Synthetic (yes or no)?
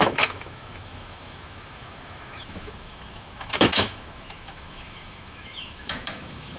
yes